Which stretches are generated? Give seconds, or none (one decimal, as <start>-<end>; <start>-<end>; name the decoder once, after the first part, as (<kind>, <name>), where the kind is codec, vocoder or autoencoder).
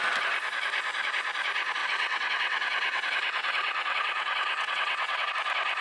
1.8-5.3 (vocoder, WaveNeXt)